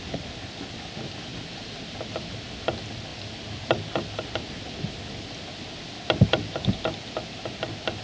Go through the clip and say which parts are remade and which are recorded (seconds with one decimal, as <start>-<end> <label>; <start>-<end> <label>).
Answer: 0.0-8.0 recorded